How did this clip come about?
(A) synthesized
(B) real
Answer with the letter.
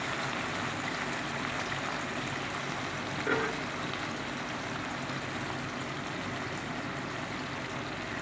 B